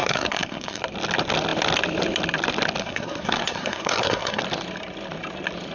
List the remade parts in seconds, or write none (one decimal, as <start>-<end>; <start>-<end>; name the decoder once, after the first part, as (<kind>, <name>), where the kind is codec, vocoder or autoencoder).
0.0-0.8 (codec, SNAC); 2.8-4.4